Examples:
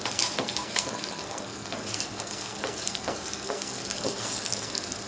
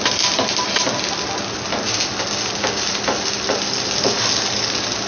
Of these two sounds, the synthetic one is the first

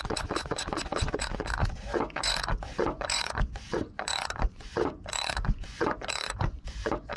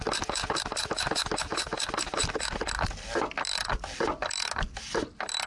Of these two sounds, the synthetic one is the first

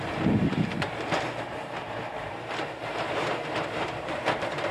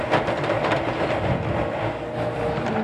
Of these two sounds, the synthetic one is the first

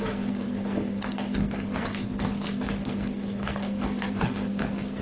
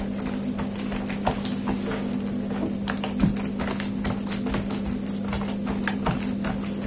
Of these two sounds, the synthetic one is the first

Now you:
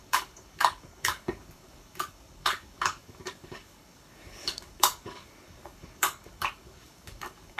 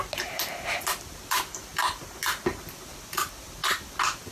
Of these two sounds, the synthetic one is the first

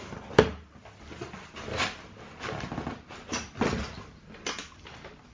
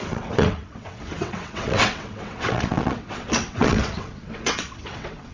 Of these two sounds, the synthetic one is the second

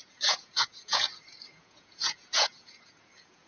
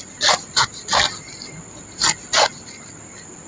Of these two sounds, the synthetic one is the first